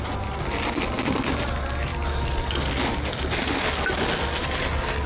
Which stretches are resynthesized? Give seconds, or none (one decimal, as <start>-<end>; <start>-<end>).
none